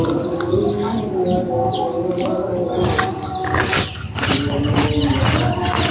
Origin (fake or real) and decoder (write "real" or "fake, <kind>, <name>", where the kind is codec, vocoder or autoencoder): real